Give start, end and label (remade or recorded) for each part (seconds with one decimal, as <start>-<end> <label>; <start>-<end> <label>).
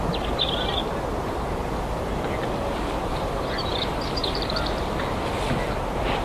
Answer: 0.0-0.8 recorded; 0.8-1.6 remade; 1.6-3.1 recorded; 3.1-3.7 remade; 3.7-4.2 recorded; 4.2-4.9 remade; 4.9-6.2 recorded